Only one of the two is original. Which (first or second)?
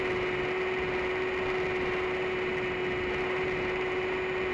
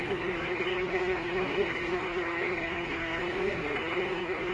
first